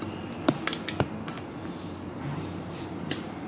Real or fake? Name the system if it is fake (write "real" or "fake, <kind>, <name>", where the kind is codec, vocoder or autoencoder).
real